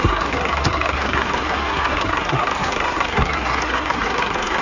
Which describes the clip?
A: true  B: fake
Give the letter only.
B